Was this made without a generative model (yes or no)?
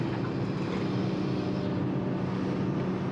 yes